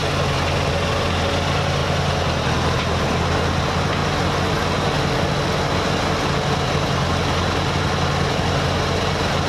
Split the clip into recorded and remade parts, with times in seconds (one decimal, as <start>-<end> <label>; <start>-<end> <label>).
0.0-9.5 recorded